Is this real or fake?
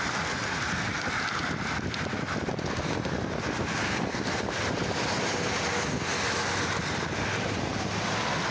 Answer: real